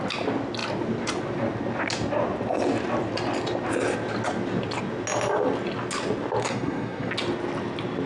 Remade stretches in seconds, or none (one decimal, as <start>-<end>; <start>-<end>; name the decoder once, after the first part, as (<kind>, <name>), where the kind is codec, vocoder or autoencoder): 6.4-7.1 (codec, SNAC)